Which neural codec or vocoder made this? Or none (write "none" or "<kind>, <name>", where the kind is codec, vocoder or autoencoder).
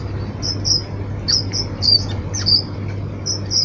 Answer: none